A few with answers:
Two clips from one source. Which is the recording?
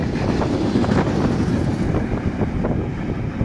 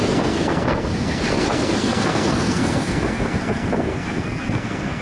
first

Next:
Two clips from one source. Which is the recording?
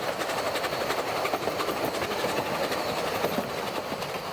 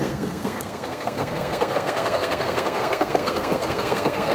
first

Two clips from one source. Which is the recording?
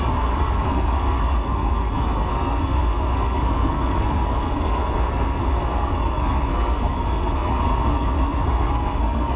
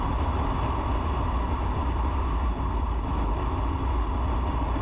second